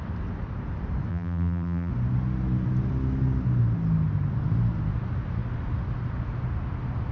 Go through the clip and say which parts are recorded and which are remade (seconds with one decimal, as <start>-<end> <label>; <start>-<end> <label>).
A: 0.0-1.1 recorded; 1.1-1.9 remade; 1.9-7.1 recorded